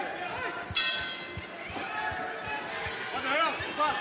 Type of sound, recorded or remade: recorded